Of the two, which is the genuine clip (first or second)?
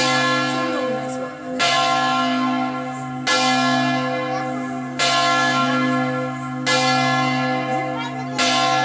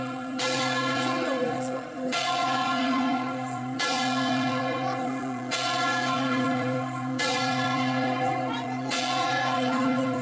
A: first